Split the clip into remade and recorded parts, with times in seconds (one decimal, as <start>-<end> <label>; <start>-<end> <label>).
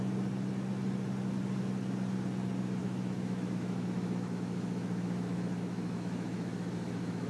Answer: 0.0-2.8 recorded; 2.8-7.3 remade